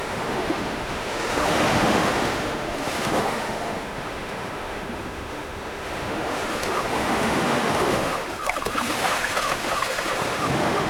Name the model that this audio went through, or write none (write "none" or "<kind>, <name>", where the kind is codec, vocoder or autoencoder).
autoencoder, DAC-VAE